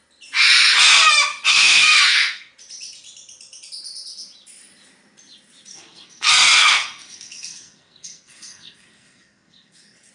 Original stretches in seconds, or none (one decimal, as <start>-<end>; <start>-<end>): 0.0-1.5; 2.5-5.7